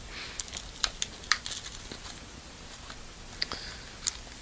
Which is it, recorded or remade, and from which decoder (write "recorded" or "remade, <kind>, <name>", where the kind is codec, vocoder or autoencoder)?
recorded